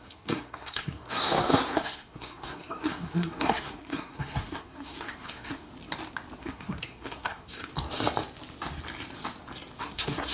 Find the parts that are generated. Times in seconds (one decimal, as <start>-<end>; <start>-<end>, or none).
0.0-5.7; 6.4-7.7; 9.8-10.3